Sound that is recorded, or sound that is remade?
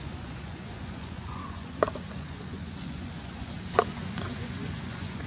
remade